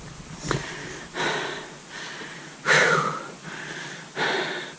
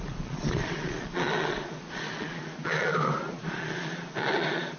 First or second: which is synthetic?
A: second